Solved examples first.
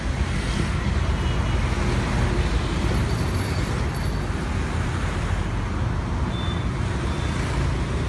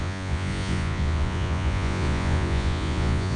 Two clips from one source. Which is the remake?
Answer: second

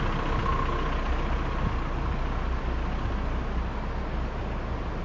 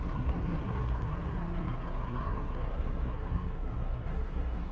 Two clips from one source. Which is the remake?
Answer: second